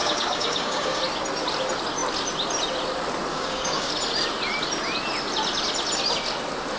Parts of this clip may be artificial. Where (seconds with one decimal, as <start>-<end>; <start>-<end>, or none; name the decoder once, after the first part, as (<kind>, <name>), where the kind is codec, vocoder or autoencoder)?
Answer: 0.0-1.0 (codec, DAC); 3.3-3.9